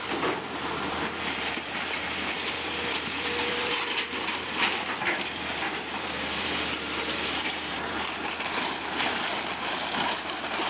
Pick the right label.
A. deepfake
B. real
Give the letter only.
A